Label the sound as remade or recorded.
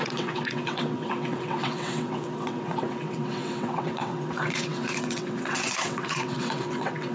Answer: remade